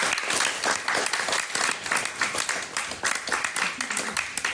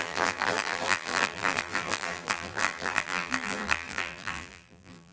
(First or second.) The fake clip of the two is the second